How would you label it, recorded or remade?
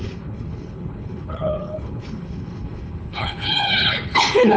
remade